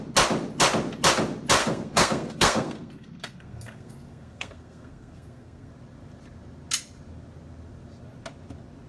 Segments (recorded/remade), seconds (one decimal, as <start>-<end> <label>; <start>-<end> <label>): 0.0-1.6 recorded; 1.6-5.7 remade; 5.7-8.9 recorded

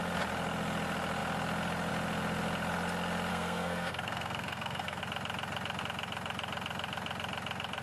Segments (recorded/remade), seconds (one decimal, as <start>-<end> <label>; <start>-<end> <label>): 0.0-3.3 recorded; 3.3-5.0 remade; 5.0-7.8 recorded